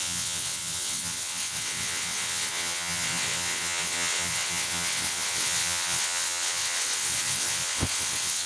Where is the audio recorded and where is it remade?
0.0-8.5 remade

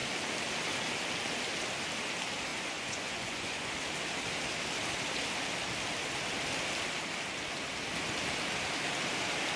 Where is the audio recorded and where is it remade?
0.0-2.5 recorded; 2.5-3.7 remade; 3.7-9.6 recorded

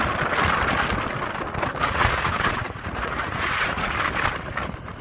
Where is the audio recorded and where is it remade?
0.0-1.8 recorded; 1.8-3.9 remade; 3.9-5.0 recorded